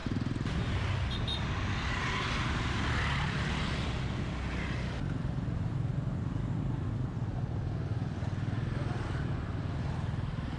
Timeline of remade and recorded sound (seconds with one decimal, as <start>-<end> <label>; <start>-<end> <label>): 0.0-10.6 recorded